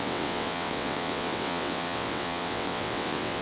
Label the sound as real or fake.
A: fake